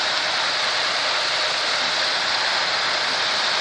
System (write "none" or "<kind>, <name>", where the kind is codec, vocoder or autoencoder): none